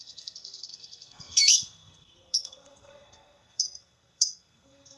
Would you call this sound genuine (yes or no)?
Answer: no